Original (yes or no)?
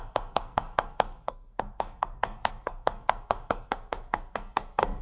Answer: no